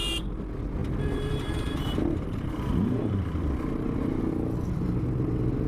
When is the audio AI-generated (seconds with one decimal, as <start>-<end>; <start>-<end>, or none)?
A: 0.8-4.2

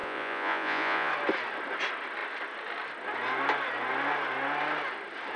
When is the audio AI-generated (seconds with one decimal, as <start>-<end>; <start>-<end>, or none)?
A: 0.0-1.1